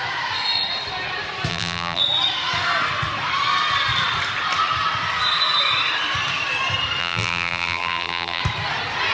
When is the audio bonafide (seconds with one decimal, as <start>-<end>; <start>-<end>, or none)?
0.0-1.5; 2.0-7.0; 8.4-9.1